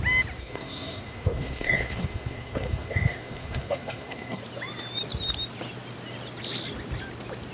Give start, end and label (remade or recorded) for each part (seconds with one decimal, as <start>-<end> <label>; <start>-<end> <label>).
0.0-0.4 recorded; 0.4-4.4 remade; 4.4-7.5 recorded